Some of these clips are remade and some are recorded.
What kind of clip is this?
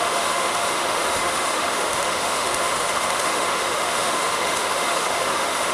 remade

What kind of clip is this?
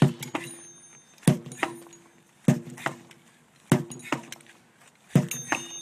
recorded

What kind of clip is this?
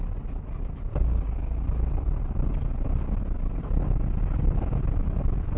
recorded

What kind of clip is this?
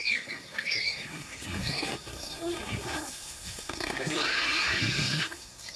remade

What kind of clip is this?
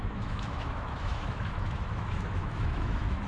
remade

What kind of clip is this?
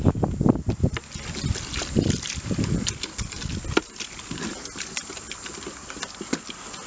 recorded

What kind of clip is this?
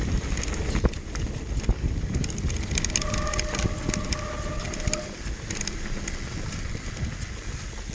recorded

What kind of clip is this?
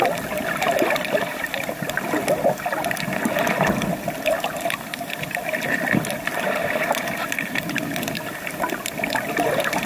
recorded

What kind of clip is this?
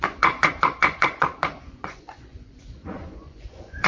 remade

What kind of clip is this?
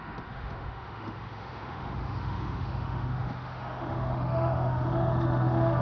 remade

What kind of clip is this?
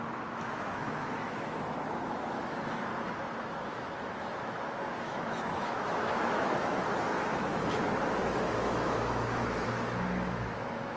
remade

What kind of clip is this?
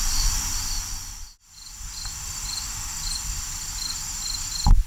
recorded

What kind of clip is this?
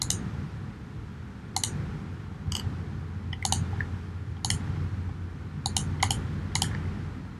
recorded